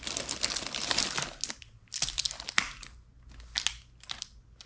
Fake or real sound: real